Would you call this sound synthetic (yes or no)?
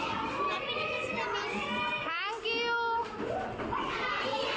no